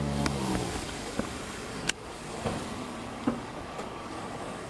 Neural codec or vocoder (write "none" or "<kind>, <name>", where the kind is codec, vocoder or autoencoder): codec, DAC